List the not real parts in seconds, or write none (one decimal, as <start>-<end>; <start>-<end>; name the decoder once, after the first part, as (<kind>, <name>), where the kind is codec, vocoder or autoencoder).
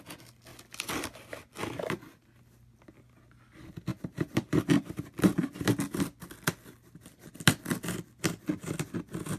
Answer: 3.9-4.8 (vocoder, BigVGAN v2)